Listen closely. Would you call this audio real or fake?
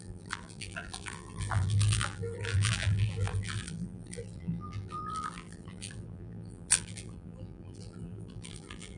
fake